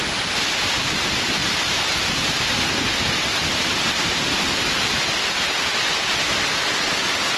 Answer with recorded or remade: recorded